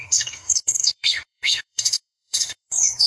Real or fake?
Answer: fake